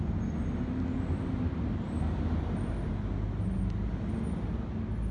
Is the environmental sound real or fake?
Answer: real